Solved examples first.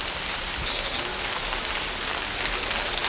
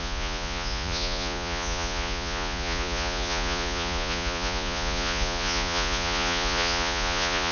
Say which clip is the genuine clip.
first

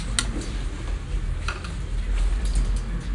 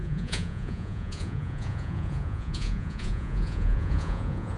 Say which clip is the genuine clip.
first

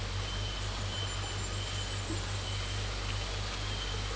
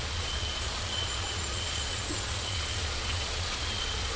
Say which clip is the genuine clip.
first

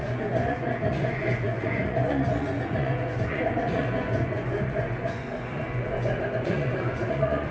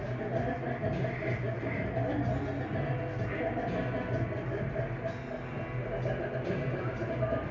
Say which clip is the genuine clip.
second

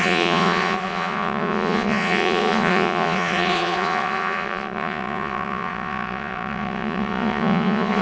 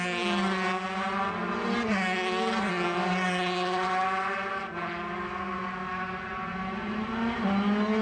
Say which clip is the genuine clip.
second